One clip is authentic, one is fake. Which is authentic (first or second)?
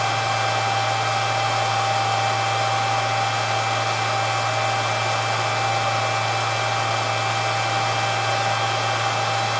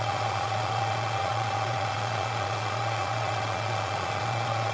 first